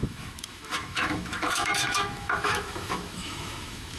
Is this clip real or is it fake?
fake